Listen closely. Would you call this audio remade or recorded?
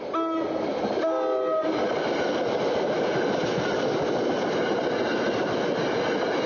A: recorded